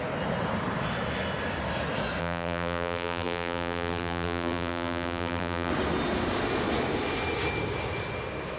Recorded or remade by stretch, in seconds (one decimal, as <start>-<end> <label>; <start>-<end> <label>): 0.0-2.2 recorded; 2.2-5.7 remade; 5.7-8.6 recorded